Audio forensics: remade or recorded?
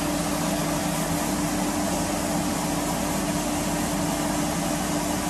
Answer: recorded